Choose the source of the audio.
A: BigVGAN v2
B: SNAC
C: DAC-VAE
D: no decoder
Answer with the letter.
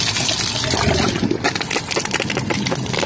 D